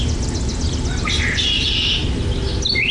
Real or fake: real